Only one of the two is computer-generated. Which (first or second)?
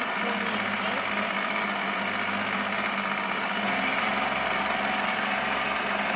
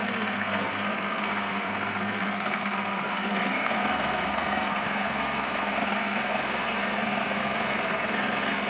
second